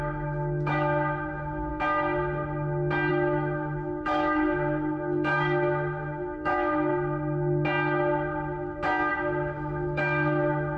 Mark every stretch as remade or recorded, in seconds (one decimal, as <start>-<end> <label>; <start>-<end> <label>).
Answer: 0.0-1.7 remade; 1.7-3.1 recorded; 3.1-6.9 remade; 6.9-9.1 recorded; 9.1-10.8 remade